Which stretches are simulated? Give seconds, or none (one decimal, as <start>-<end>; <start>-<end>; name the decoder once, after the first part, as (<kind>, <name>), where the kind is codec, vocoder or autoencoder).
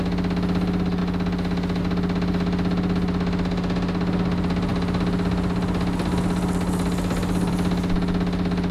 none